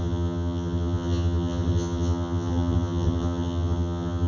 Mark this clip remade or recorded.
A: remade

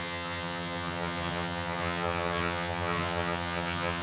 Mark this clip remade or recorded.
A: remade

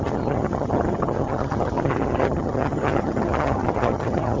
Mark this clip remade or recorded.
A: remade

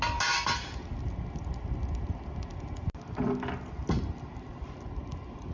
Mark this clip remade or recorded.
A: recorded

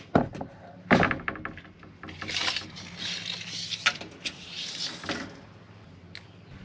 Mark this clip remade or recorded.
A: recorded